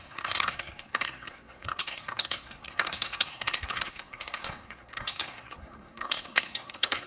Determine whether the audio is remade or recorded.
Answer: remade